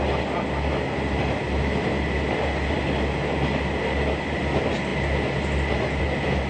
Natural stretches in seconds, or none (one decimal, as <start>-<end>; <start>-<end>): 0.0-6.5